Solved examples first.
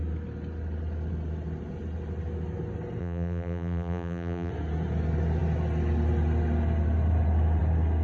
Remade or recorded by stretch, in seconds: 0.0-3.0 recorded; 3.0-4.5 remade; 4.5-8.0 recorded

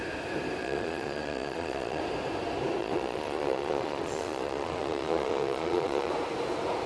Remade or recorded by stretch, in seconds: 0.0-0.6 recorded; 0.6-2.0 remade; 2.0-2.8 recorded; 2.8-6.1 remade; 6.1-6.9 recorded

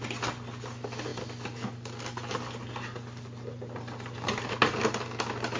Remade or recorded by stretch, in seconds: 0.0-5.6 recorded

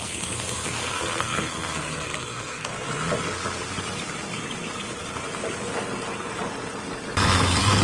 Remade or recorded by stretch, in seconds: 0.0-2.7 remade; 2.7-7.8 recorded

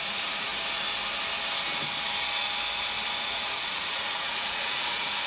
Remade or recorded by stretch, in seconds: 0.0-0.5 remade; 0.5-3.2 recorded; 3.2-5.3 remade

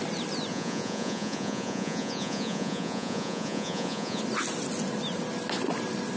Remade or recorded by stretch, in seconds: 0.0-0.5 recorded; 0.5-4.2 remade; 4.2-6.2 recorded

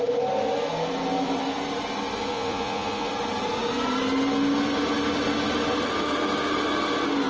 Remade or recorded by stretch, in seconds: 0.0-2.3 recorded; 2.3-3.1 remade; 3.1-7.3 recorded

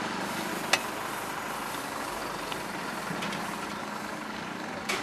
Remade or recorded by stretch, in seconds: 0.0-0.5 remade; 0.5-1.8 recorded; 1.8-2.2 remade; 2.2-3.8 recorded; 3.8-5.0 remade